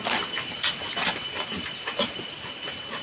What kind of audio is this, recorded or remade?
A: recorded